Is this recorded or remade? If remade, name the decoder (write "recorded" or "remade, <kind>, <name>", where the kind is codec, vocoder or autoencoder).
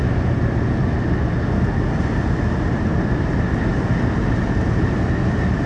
recorded